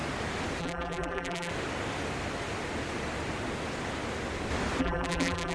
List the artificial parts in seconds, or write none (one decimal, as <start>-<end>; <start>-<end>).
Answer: 0.6-1.5; 4.8-5.5